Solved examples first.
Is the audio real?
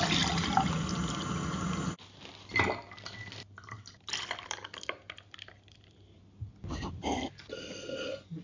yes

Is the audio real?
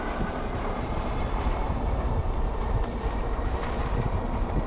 no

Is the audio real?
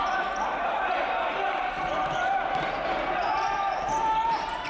yes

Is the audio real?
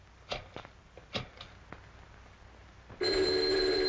yes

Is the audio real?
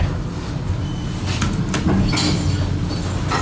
yes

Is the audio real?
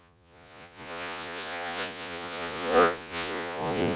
no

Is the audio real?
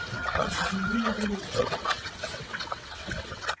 no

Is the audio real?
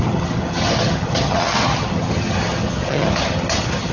no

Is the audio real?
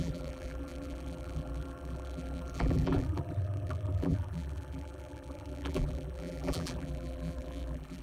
no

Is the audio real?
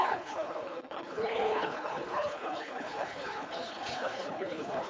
no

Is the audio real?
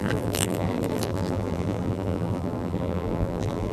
no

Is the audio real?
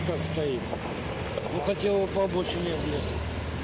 yes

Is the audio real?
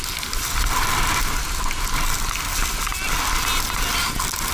yes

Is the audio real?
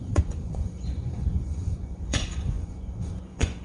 no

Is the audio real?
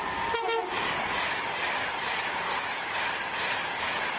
yes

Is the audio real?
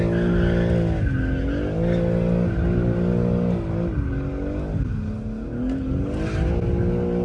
yes